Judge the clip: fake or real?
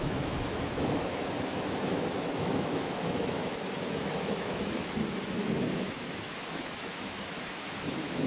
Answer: fake